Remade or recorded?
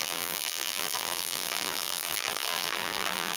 remade